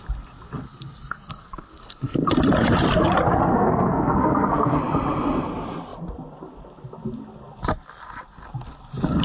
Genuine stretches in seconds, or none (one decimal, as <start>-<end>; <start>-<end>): 0.0-1.0; 2.3-3.5; 4.8-9.2